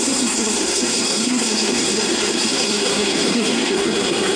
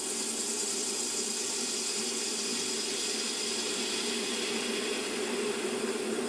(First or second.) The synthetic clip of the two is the first